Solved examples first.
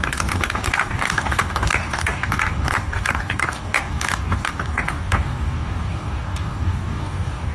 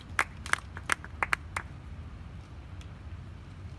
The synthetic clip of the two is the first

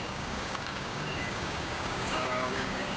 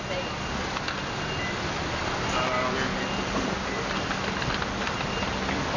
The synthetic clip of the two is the first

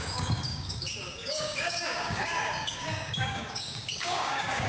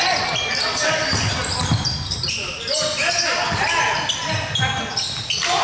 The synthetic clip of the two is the first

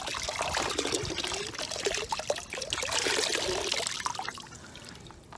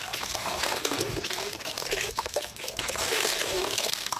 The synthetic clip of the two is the second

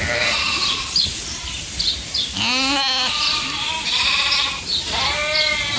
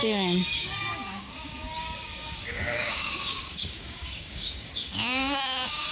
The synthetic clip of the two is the second